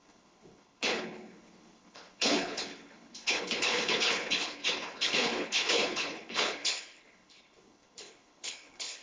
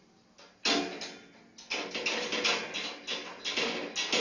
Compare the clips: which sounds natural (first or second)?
second